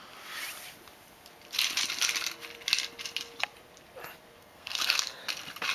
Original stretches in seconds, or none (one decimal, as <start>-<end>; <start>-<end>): 0.0-4.4; 5.2-5.7